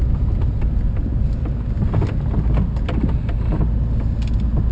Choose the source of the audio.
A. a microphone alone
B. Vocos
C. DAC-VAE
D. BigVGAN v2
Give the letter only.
A